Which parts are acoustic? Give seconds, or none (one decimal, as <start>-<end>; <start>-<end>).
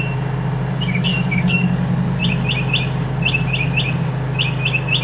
0.0-1.1; 2.2-5.0